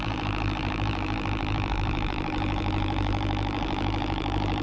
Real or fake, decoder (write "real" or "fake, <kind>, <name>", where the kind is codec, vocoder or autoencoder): fake, vocoder, BigVGAN v2